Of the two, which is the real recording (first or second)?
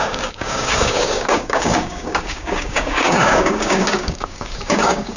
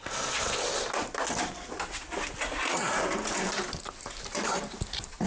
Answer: second